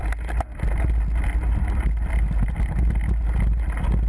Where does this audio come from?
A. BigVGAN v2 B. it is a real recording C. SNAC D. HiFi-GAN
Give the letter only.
B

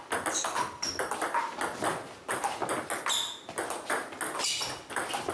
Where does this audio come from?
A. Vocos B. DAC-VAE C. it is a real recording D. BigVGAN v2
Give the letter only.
C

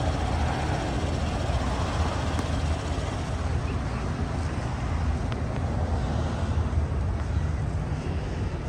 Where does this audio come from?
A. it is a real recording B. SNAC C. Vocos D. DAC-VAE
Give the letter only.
A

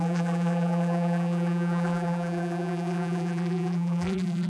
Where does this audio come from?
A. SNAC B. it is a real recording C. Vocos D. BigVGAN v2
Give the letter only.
D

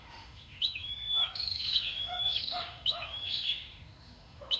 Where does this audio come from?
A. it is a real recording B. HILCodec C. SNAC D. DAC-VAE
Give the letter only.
D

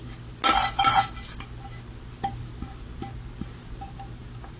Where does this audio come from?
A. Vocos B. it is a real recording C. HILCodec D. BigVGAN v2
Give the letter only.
B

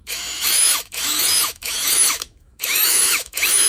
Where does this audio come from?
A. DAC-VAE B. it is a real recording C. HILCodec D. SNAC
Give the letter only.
A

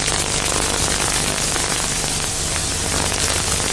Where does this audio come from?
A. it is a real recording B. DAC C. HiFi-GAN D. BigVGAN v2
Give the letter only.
D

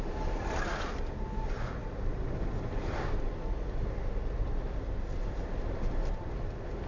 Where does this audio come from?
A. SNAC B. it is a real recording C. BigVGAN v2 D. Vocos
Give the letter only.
B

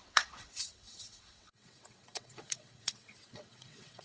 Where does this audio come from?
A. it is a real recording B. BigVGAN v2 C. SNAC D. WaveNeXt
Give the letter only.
D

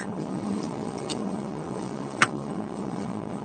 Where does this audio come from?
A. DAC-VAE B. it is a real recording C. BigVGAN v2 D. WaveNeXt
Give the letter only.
D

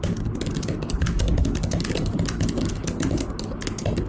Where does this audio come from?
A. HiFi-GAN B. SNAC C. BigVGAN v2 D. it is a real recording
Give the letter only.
D